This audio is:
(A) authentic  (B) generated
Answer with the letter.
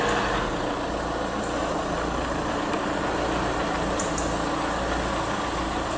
A